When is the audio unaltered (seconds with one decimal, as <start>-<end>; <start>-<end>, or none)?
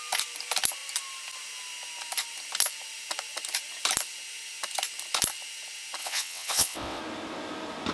0.0-6.0; 7.0-7.9